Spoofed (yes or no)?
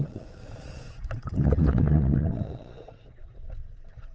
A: yes